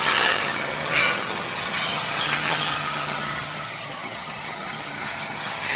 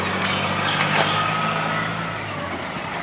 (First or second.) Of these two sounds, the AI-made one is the first